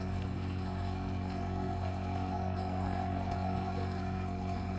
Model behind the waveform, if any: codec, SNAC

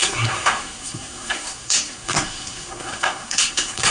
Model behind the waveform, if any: codec, SNAC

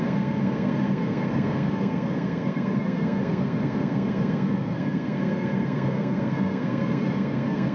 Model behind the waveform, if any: codec, SNAC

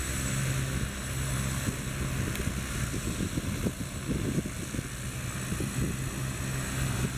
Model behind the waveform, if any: none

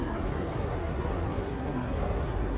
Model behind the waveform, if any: codec, SNAC